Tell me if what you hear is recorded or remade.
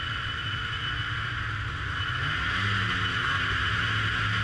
recorded